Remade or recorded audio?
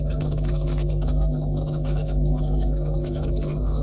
remade